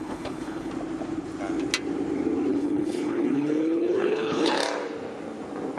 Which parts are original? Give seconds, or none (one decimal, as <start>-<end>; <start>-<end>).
0.7-2.5; 4.5-5.8